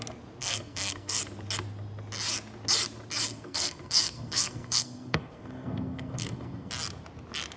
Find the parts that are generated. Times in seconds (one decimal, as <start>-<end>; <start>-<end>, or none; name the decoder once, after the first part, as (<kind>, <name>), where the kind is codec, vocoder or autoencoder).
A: 0.4-1.2 (codec, SNAC); 3.3-6.7